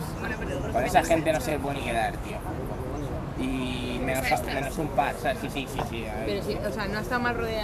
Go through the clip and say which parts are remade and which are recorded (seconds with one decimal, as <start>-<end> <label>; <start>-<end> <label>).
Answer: 0.0-1.5 recorded; 1.5-2.3 remade; 2.3-3.5 recorded; 3.5-6.0 remade; 6.0-7.6 recorded

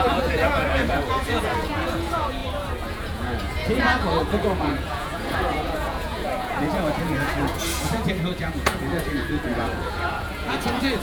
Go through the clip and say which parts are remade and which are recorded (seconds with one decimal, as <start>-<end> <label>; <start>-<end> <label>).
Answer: 0.0-2.4 remade; 2.4-2.9 recorded; 2.9-11.0 remade

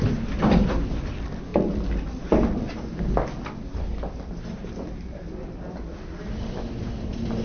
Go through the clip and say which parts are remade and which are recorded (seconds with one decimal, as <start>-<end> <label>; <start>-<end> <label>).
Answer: 0.0-7.4 recorded

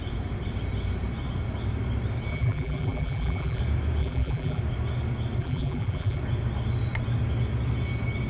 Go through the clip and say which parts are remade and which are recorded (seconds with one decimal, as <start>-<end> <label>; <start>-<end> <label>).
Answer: 0.0-2.3 recorded; 2.3-3.6 remade; 3.6-4.0 recorded; 4.0-4.6 remade; 4.6-5.4 recorded; 5.4-6.2 remade; 6.2-8.3 recorded